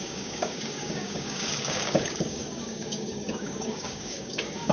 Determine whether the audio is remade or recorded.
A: remade